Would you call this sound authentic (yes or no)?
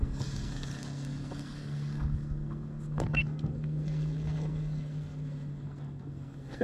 no